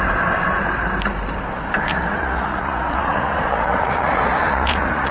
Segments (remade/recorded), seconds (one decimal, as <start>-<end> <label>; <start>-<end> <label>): 0.0-1.9 recorded; 1.9-5.1 remade